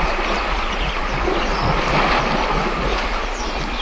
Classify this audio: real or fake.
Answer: real